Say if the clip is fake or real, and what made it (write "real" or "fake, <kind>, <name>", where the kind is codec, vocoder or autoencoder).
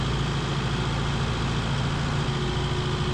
real